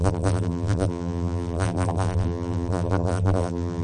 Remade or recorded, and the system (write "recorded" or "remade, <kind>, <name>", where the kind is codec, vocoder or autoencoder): remade, vocoder, BigVGAN v2